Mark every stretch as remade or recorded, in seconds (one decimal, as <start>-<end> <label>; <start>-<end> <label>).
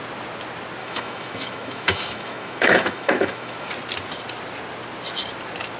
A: 0.0-0.8 recorded; 0.8-3.7 remade; 3.7-5.8 recorded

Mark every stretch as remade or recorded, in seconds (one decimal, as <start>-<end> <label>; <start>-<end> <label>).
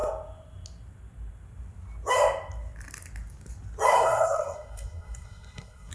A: 0.0-3.9 recorded; 3.9-5.9 remade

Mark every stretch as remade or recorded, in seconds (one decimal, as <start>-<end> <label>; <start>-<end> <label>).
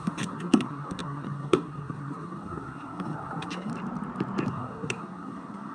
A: 0.0-3.7 remade; 3.7-4.5 recorded; 4.5-5.7 remade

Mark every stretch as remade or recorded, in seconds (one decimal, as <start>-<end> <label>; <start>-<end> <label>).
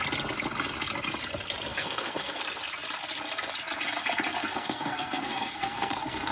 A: 0.0-1.7 recorded; 1.7-2.4 remade; 2.4-4.4 recorded; 4.4-6.3 remade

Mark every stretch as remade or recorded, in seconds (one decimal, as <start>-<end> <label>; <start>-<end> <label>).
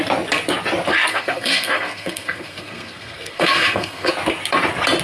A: 0.0-1.1 recorded; 1.1-4.1 remade; 4.1-5.0 recorded